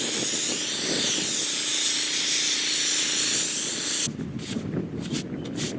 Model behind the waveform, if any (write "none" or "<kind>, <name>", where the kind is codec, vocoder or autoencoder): none